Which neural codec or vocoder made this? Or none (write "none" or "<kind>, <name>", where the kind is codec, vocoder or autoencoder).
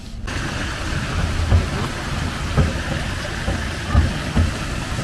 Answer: none